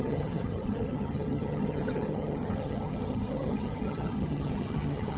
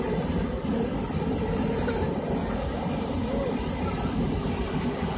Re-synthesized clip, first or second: first